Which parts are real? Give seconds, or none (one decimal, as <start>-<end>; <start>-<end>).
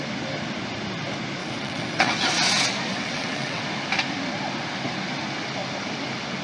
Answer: 0.0-1.4; 2.1-2.9; 3.6-6.4